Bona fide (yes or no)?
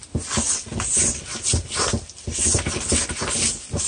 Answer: yes